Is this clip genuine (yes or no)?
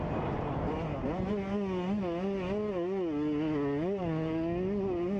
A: yes